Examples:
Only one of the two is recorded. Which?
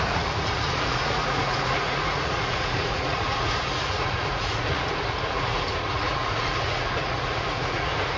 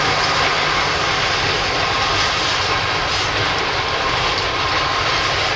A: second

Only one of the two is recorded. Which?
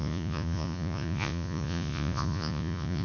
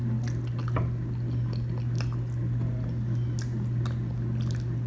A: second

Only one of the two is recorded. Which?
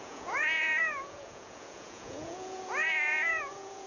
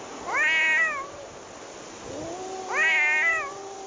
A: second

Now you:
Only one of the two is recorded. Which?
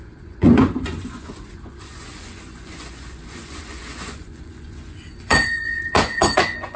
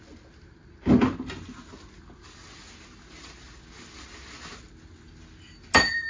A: second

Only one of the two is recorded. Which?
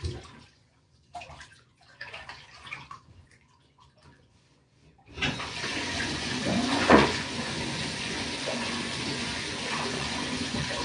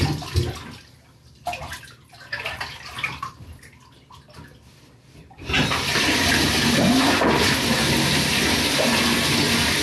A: second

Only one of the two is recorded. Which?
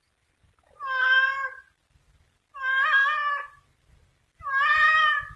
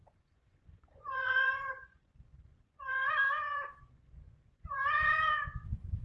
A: first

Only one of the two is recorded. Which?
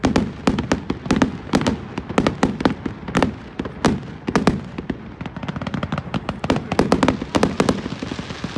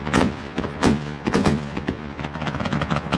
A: first